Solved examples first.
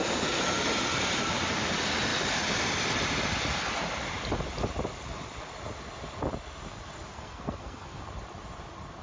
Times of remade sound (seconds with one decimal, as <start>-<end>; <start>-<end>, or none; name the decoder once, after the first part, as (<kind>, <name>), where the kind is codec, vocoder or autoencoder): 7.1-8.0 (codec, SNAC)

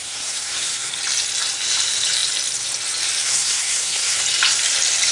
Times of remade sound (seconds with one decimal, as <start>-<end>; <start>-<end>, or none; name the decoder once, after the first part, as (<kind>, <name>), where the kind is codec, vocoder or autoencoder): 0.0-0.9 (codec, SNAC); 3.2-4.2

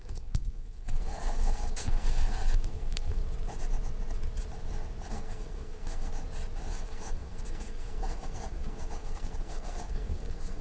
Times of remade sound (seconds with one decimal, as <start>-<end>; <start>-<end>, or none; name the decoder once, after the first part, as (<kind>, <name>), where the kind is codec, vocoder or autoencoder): 0.0-3.2 (codec, SNAC); 5.1-6.1; 6.7-10.6

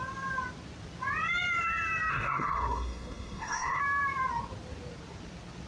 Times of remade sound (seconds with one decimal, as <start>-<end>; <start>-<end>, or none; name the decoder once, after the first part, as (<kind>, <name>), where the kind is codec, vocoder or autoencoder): 2.1-3.8 (codec, SNAC)

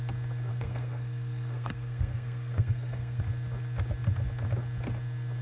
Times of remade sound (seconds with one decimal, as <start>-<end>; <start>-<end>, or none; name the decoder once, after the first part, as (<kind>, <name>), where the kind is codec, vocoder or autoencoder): 0.5-3.2 (codec, SNAC)

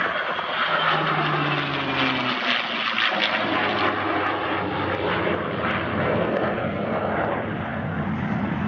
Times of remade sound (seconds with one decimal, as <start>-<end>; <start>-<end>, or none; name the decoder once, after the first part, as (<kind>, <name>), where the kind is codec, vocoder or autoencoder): 5.9-7.1 (codec, SNAC)

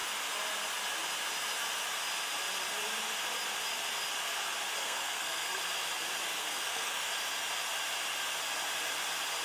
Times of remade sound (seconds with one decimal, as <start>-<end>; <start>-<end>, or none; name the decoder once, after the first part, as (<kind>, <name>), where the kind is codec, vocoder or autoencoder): 4.8-5.6 (codec, SNAC); 6.4-6.9

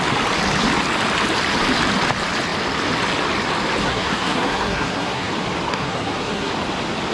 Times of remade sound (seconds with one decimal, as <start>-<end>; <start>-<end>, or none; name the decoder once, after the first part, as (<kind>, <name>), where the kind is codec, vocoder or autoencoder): 3.8-5.3 (codec, SNAC); 5.7-6.5